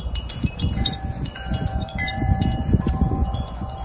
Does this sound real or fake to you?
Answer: fake